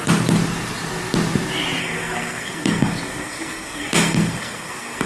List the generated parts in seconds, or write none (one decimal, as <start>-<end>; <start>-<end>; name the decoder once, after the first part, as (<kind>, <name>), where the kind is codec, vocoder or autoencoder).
1.8-5.1 (codec, SNAC)